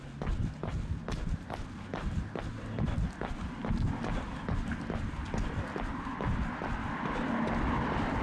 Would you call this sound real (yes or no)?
yes